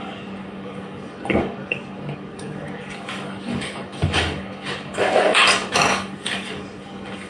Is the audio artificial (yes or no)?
yes